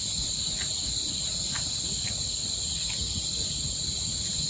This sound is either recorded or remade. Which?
recorded